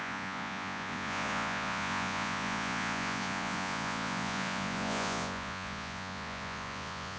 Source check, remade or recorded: remade